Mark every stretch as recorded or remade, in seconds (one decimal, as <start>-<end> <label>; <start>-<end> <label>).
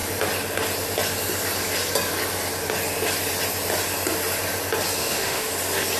0.0-5.0 recorded; 5.0-5.5 remade; 5.5-6.0 recorded